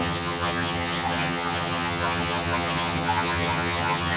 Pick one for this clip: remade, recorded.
remade